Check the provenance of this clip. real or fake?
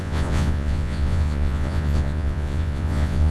fake